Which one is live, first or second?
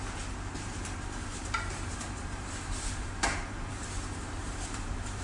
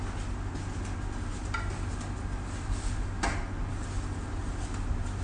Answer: second